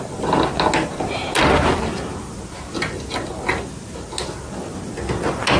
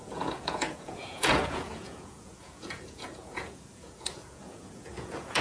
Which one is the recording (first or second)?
first